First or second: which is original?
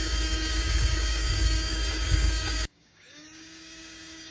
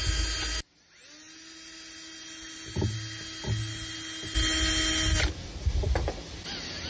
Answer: second